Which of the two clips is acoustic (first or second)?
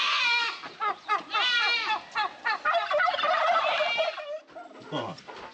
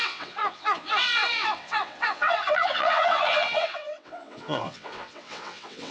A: first